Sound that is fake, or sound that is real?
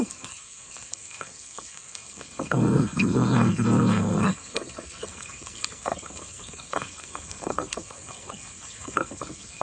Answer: fake